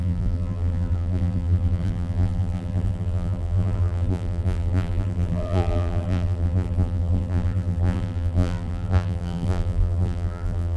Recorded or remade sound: remade